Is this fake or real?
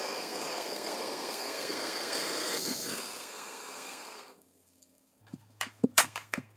fake